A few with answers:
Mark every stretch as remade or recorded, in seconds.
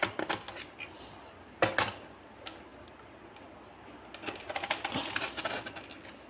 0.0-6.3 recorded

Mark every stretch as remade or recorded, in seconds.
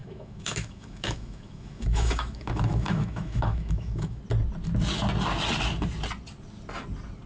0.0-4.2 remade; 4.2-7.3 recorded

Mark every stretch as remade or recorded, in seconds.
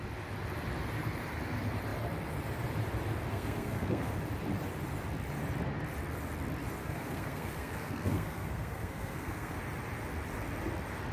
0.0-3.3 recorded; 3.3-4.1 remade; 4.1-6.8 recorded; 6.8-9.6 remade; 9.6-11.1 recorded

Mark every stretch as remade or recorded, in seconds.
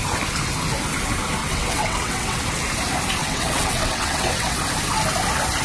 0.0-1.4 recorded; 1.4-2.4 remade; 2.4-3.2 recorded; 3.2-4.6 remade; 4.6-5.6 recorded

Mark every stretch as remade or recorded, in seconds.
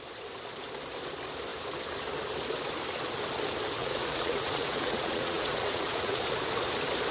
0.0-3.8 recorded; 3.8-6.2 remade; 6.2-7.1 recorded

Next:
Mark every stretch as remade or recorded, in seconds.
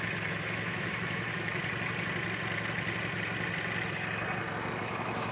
0.0-1.6 remade; 1.6-4.8 recorded; 4.8-5.3 remade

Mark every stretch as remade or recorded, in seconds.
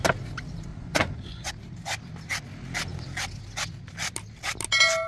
0.0-0.7 recorded; 0.7-1.5 remade; 1.5-5.1 recorded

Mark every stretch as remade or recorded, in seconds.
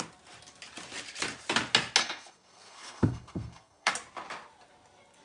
0.0-2.0 recorded; 2.0-3.9 remade; 3.9-5.2 recorded